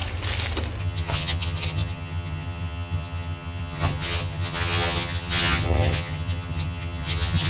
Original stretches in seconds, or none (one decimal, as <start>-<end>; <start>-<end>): 0.0-0.8